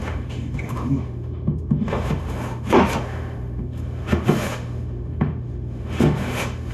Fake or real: fake